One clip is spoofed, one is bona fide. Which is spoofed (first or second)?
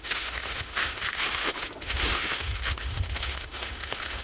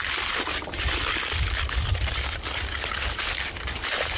first